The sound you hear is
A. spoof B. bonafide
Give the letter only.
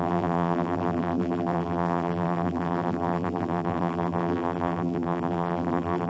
A